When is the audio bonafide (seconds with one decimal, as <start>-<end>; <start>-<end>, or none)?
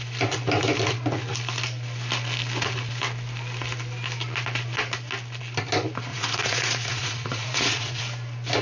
0.0-6.1; 8.0-8.6